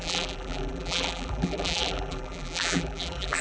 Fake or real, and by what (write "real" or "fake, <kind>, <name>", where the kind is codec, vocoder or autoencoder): fake, vocoder, BigVGAN v2